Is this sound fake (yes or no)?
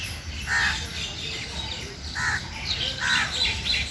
no